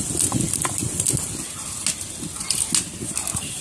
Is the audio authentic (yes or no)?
yes